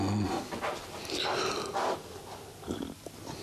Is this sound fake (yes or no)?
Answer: no